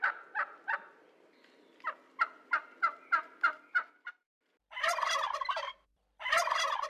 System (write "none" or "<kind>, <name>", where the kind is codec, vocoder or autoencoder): none